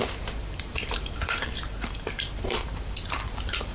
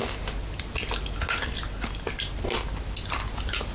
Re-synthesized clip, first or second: first